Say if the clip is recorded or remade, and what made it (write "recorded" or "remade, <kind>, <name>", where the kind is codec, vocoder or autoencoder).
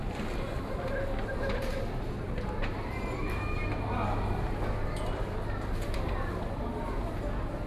recorded